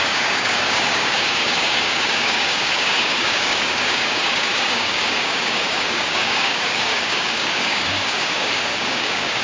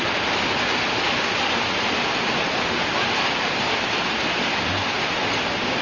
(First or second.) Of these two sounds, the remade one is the first